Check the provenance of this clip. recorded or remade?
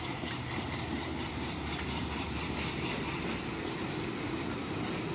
recorded